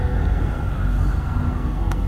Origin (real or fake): fake